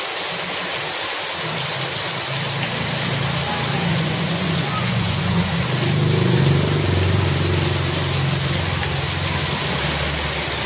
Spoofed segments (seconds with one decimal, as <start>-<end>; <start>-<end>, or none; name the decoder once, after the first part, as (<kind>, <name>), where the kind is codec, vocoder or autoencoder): 3.9-5.5 (vocoder, Vocos)